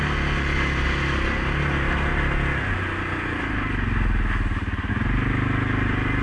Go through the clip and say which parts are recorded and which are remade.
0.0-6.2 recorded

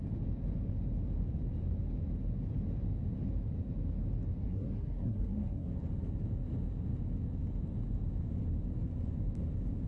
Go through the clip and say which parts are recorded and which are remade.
0.0-4.4 recorded; 4.4-5.7 remade; 5.7-9.9 recorded

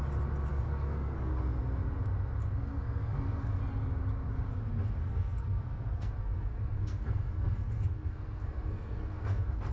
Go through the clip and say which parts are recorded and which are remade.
0.0-0.5 recorded; 0.5-1.3 remade; 1.3-2.4 recorded; 2.4-3.6 remade; 3.6-5.0 recorded; 5.0-9.7 remade

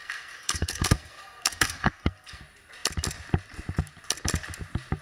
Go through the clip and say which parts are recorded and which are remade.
0.0-2.4 remade; 2.4-5.0 recorded

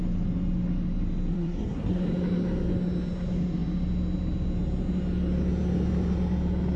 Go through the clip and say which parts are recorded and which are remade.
0.0-1.3 recorded; 1.3-2.0 remade; 2.0-6.8 recorded

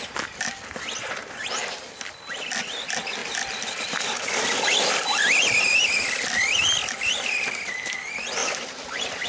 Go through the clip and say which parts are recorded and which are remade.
0.0-9.3 recorded

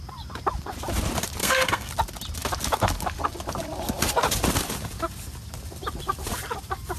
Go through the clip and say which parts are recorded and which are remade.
0.0-1.4 recorded; 1.4-1.9 remade; 1.9-7.0 recorded